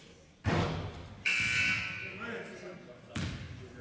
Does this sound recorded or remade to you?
recorded